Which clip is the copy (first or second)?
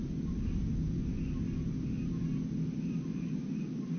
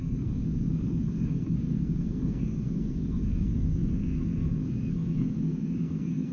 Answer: second